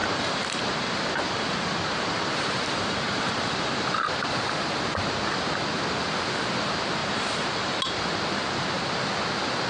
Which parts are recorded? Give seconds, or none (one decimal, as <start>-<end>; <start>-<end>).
3.8-7.0; 7.8-9.7